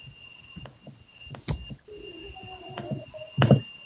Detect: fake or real real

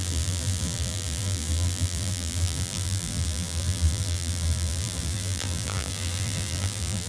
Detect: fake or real fake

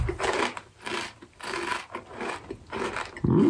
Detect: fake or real real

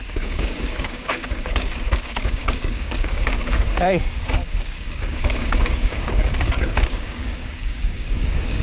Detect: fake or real fake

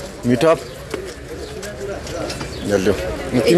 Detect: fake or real real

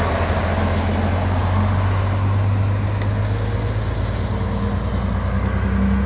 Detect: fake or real real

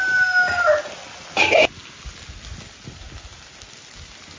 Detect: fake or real real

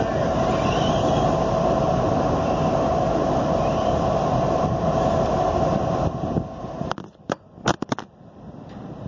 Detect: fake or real fake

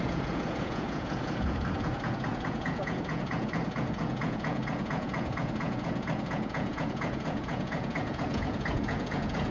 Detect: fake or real fake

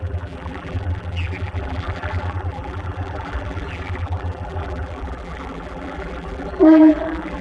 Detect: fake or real fake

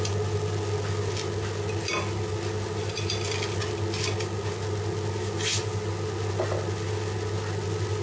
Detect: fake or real real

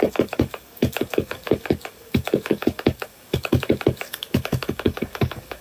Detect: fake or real fake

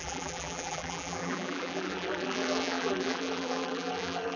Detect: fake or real fake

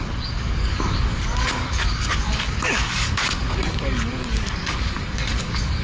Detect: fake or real fake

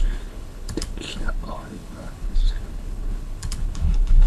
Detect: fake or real fake